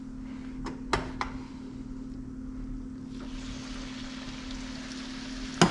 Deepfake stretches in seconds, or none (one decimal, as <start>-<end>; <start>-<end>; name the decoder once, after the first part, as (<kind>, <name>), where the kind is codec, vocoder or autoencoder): none